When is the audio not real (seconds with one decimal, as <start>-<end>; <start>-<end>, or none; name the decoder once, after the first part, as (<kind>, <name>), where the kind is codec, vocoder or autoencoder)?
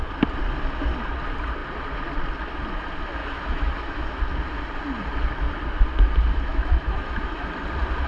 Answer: 3.2-4.2 (autoencoder, DAC-VAE); 6.5-7.5